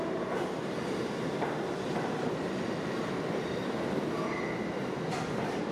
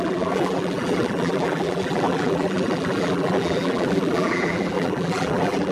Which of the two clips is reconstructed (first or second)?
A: second